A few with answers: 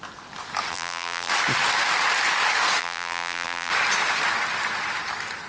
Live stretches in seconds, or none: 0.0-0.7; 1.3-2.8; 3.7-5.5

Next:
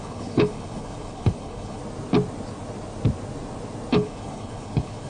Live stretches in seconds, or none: 1.8-3.9

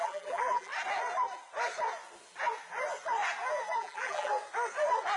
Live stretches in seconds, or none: 0.7-3.8; 4.3-5.2

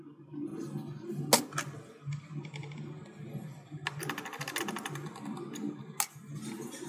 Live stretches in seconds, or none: 0.0-6.9

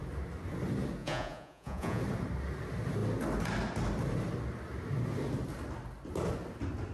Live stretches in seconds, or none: 0.0-1.0; 2.0-6.9